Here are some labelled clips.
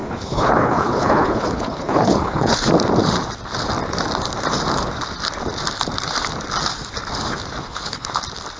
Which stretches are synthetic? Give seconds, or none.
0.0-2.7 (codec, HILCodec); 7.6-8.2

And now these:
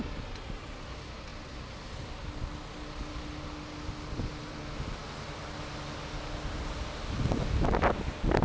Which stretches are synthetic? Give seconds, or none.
none

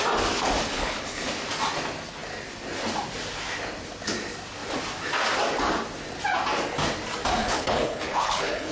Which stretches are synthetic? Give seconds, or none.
0.7-1.3 (codec, HILCodec); 7.4-8.7

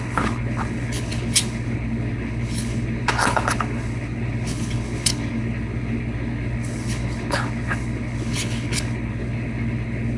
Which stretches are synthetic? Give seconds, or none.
0.0-10.2 (codec, HILCodec)